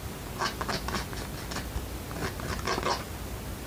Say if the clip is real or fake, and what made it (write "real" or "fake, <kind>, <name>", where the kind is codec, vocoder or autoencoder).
real